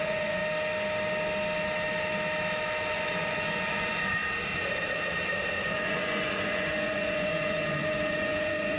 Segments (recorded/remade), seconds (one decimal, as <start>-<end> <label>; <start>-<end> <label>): 0.0-0.4 remade; 0.4-2.9 recorded; 2.9-4.2 remade; 4.2-5.6 recorded; 5.6-8.8 remade